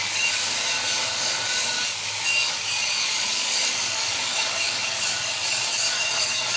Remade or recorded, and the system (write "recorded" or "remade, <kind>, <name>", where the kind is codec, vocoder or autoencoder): remade, codec, DAC